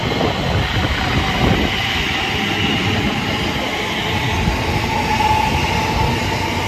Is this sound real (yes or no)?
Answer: yes